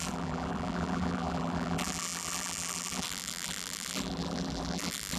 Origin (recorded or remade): remade